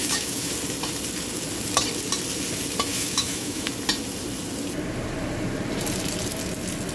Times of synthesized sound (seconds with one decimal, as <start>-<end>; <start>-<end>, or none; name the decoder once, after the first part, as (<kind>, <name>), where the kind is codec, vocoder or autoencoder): 0.0-0.5 (autoencoder, DAC-VAE); 2.9-3.7